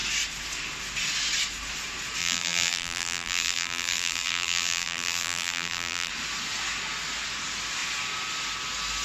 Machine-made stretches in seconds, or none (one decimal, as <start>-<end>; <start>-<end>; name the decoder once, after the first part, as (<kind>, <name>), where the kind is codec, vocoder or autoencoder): 2.2-6.1 (vocoder, BigVGAN v2)